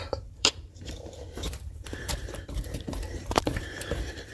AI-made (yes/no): yes